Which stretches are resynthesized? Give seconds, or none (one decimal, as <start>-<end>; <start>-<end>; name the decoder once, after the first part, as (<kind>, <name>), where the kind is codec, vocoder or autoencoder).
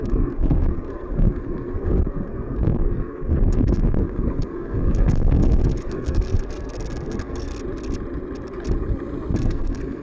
0.0-7.5 (codec, SNAC); 9.4-10.0